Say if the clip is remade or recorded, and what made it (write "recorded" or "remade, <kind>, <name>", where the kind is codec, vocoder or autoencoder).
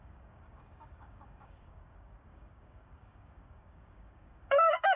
remade, codec, DAC